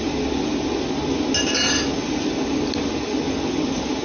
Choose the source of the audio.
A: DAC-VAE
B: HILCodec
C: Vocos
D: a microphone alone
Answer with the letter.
D